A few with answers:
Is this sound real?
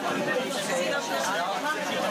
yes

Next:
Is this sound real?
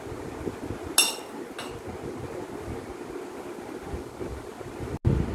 yes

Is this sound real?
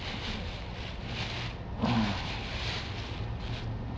yes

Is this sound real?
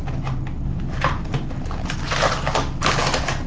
yes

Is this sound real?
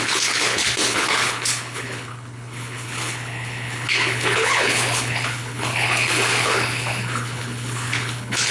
no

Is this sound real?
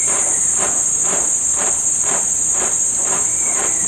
no